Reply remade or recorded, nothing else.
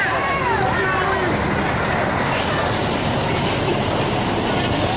recorded